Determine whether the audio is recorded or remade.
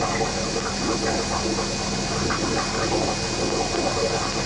recorded